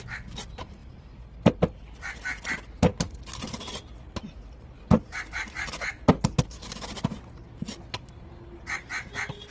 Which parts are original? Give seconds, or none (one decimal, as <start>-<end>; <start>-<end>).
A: 0.0-9.5